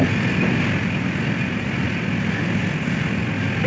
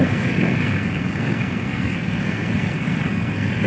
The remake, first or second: second